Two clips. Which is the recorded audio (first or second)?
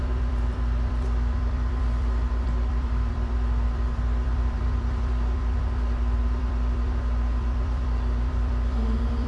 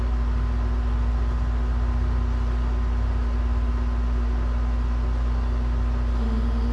second